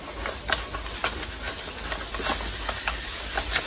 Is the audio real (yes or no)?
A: yes